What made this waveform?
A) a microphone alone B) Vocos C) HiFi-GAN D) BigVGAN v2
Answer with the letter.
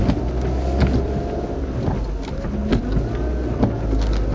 A